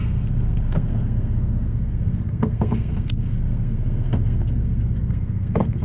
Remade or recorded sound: remade